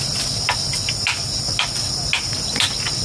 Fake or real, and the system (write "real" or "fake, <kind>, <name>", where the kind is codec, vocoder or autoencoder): real